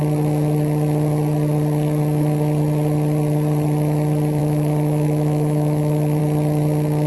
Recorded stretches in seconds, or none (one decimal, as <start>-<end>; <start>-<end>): 0.0-4.4; 6.2-7.1